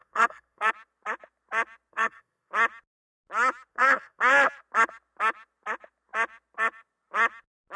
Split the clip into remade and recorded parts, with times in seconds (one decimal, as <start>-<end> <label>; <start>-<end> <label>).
0.0-0.7 remade; 0.7-1.9 recorded; 1.9-2.5 remade; 2.5-3.7 recorded; 3.7-4.2 remade; 4.2-7.8 recorded